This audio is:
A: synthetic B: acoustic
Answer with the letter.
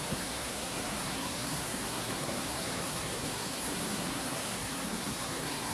A